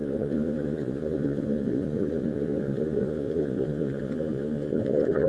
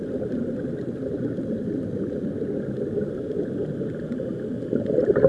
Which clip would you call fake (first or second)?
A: first